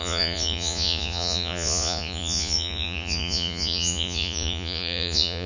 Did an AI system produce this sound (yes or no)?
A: yes